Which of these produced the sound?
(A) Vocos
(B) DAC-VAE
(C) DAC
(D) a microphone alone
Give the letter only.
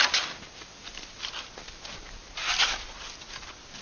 D